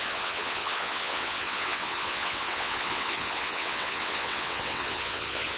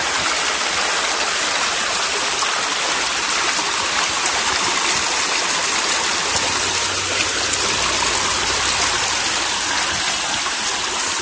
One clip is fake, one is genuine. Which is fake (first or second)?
first